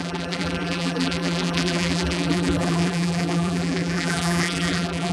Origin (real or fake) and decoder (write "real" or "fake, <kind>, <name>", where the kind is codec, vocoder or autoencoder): fake, vocoder, BigVGAN v2